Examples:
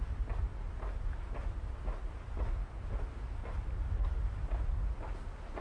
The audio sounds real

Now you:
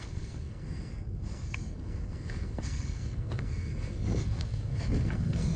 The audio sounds fake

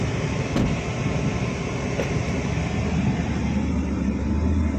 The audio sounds real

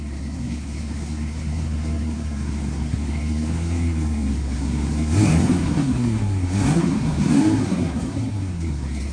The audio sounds fake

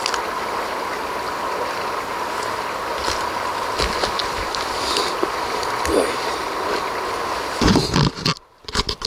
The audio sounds real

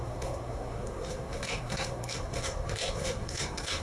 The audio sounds fake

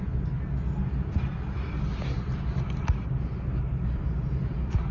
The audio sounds real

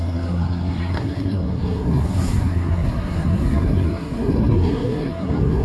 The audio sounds fake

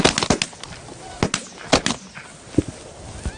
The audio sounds real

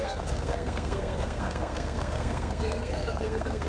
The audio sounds fake